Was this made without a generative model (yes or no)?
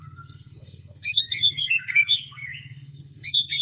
no